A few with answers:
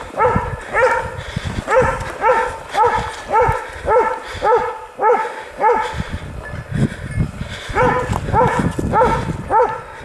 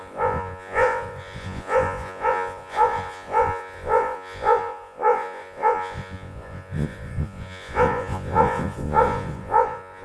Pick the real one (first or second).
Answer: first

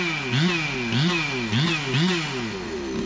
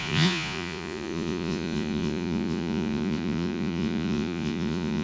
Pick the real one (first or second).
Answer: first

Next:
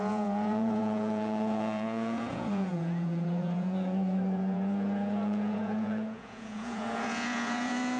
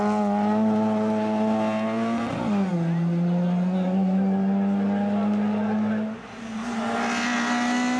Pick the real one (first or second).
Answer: second